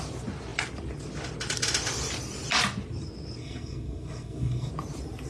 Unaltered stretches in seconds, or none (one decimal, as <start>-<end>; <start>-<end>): 0.0-3.4; 4.7-5.3